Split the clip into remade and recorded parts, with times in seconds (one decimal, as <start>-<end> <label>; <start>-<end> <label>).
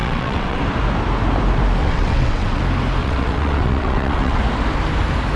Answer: 0.0-0.6 remade; 0.6-1.8 recorded; 1.8-2.6 remade; 2.6-3.0 recorded; 3.0-4.4 remade; 4.4-5.4 recorded